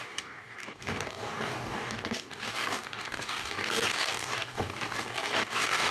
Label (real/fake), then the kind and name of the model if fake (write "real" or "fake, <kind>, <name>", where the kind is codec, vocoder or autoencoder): fake, codec, DAC